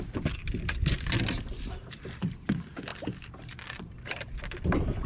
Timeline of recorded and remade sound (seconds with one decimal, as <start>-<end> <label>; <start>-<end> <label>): 0.0-0.4 remade; 0.4-1.2 recorded; 1.2-5.1 remade